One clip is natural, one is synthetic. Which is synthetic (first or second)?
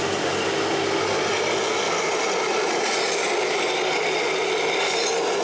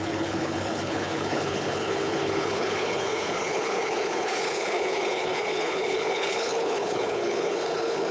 second